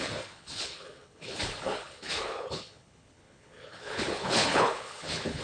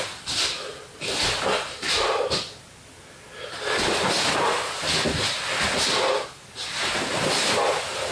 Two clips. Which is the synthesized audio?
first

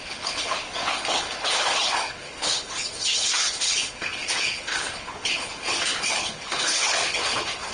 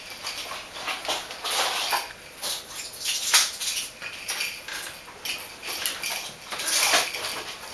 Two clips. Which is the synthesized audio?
first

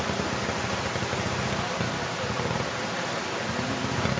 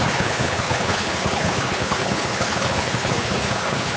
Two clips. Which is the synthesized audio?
second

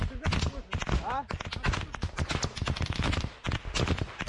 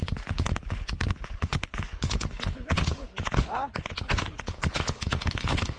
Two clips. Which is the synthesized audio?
second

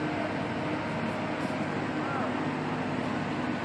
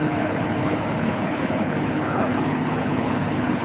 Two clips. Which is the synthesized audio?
second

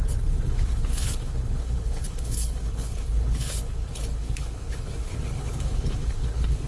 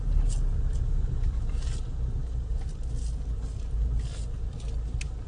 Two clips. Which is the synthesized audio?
first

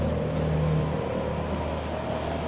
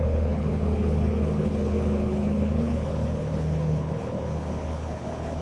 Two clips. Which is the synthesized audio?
second